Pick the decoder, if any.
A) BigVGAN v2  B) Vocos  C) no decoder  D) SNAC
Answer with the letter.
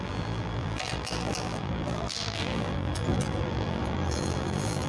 A